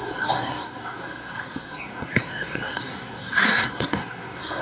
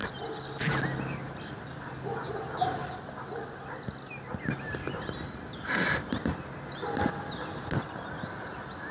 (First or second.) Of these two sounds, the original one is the second